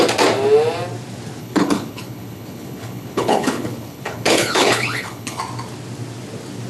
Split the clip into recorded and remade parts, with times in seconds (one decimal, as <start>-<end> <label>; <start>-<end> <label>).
0.0-1.4 recorded; 1.4-5.4 remade; 5.4-6.7 recorded

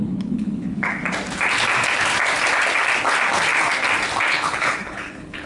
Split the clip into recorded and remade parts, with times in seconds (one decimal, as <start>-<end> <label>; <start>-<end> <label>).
0.0-1.0 remade; 1.0-4.3 recorded; 4.3-5.5 remade

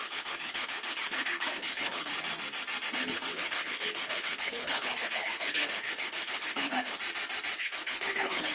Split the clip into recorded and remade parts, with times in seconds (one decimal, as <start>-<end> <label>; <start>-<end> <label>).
0.0-2.1 remade; 2.1-2.9 recorded; 2.9-7.0 remade; 7.0-7.6 recorded; 7.6-8.5 remade